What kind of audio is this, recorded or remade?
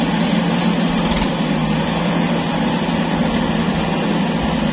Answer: recorded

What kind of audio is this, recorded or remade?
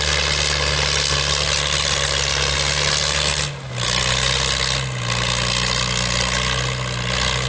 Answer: recorded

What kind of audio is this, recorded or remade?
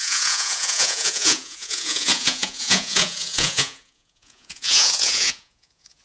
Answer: remade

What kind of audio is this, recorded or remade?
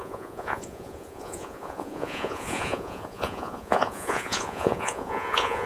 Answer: remade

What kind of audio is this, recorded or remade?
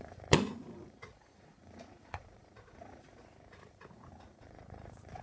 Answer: remade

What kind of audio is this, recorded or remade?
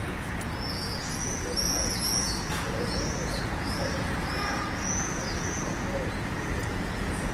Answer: remade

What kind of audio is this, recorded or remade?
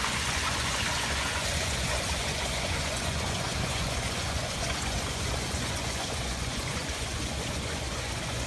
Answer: remade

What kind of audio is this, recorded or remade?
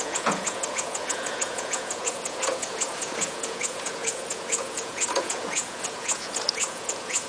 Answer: remade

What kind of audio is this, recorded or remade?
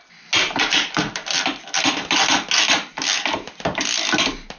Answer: recorded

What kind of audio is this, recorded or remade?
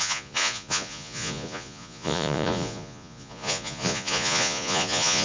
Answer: remade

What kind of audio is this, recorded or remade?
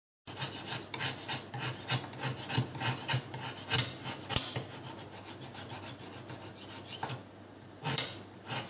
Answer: recorded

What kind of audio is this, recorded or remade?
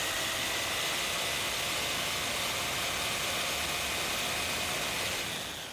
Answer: recorded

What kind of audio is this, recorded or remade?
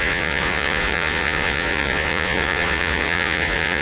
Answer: remade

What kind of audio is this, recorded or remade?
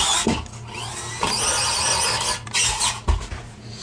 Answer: recorded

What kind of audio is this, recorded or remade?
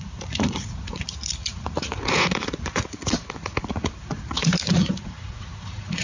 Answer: remade